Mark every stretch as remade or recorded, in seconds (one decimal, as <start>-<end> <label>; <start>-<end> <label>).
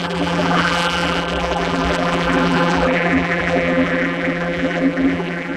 0.0-5.6 remade